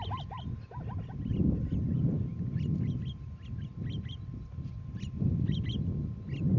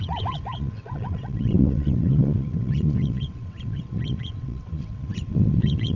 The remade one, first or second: second